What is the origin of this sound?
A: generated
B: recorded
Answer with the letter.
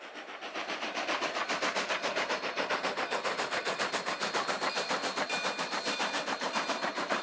A